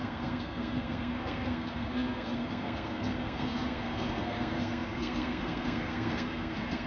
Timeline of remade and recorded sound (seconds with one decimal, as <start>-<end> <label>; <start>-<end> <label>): 0.0-6.9 remade